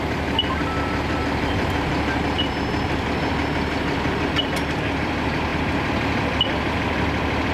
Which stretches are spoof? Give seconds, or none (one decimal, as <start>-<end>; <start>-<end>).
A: none